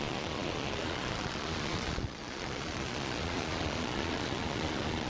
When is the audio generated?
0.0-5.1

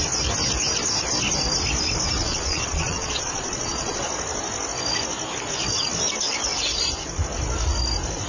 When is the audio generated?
2.2-4.0

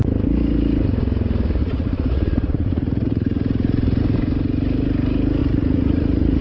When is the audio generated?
1.6-4.0; 5.4-6.4